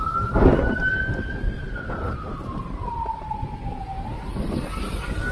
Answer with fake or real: real